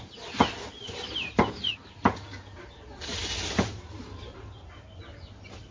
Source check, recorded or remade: recorded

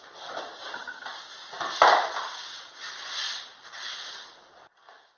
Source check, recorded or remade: recorded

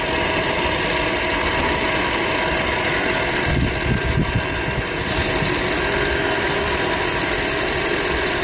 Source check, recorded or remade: recorded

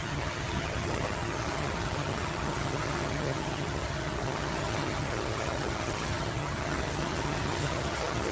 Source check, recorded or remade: remade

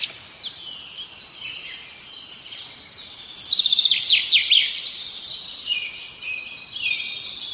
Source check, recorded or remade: recorded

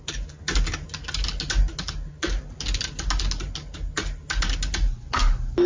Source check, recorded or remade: recorded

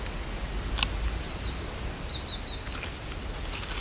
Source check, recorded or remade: recorded